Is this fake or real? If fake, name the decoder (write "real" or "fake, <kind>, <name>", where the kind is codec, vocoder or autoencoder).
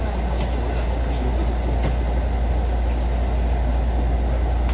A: real